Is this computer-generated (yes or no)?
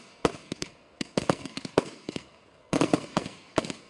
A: yes